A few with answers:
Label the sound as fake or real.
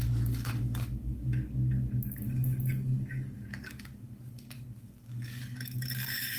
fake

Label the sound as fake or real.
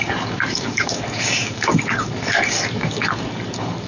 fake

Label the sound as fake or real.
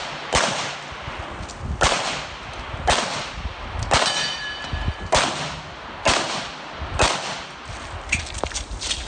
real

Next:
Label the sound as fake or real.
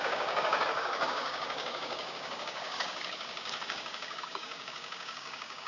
fake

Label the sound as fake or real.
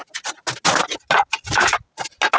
real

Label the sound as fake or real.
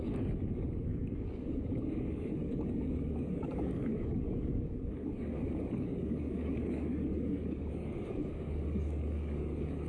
fake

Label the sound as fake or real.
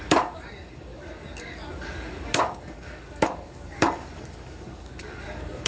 fake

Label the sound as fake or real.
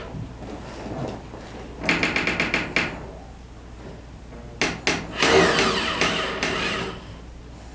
real